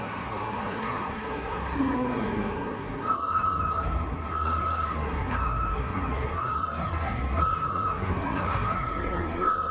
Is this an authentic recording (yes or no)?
no